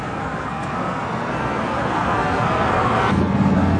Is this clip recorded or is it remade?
remade